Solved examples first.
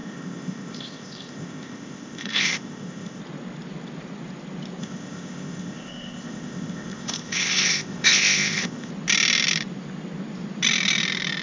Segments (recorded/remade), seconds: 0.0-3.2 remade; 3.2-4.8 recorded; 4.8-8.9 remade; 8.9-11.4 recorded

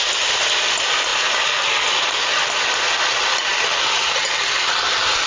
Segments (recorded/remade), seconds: 0.0-5.3 recorded

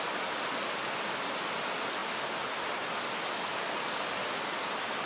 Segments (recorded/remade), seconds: 0.0-5.1 recorded

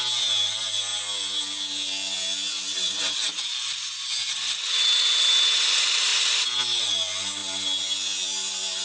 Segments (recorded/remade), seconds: 0.0-8.8 recorded

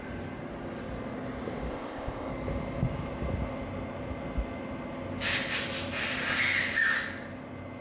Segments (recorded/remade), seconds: 0.0-1.7 recorded; 1.7-2.3 remade; 2.3-7.8 recorded